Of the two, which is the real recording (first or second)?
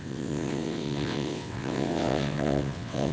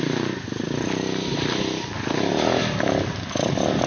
second